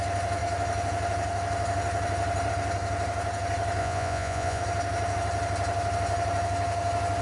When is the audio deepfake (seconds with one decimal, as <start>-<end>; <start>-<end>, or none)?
3.8-4.6